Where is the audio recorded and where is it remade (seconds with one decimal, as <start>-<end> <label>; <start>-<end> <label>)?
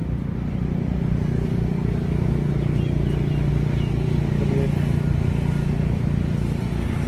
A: 0.0-7.1 recorded